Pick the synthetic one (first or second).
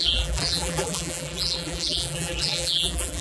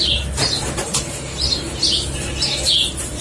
first